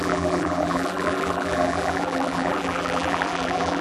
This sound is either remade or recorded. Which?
remade